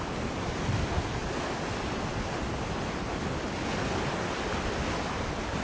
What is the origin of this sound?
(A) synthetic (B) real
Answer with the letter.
B